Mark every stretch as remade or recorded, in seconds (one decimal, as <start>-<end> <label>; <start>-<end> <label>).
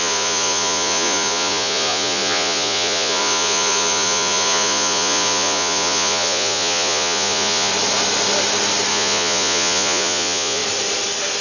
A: 0.0-7.7 remade; 7.7-8.9 recorded; 8.9-10.6 remade; 10.6-11.4 recorded